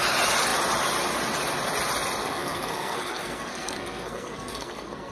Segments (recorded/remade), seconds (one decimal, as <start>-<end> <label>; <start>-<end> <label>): 0.0-2.2 recorded; 2.2-5.1 remade